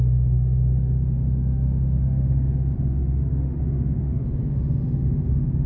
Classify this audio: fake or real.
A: fake